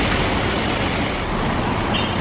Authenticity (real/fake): real